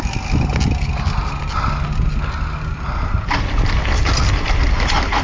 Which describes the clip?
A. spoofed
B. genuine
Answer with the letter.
B